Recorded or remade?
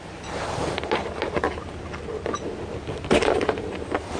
recorded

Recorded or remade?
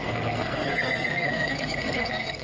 remade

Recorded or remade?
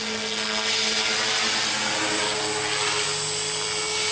recorded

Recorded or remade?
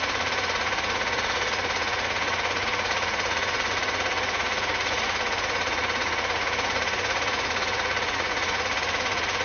remade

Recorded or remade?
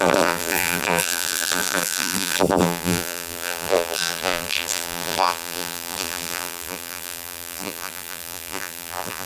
remade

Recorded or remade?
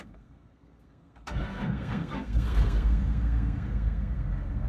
remade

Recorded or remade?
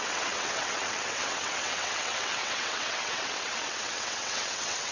remade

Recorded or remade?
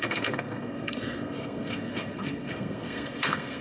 remade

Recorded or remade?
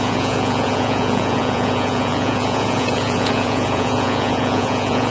remade